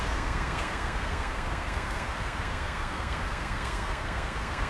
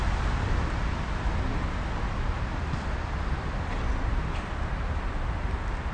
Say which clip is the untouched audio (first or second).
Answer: second